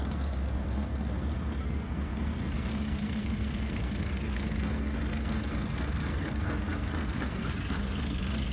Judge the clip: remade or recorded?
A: remade